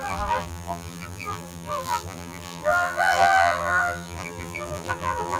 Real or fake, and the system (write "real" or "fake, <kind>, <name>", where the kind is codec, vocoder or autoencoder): fake, vocoder, BigVGAN v2